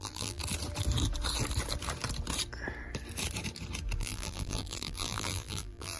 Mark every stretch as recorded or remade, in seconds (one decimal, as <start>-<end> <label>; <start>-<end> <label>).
0.0-0.4 remade; 0.4-4.0 recorded; 4.0-6.0 remade